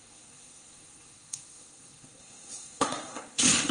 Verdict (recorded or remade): remade